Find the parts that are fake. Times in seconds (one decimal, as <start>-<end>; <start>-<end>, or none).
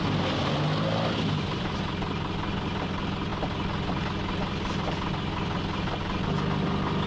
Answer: none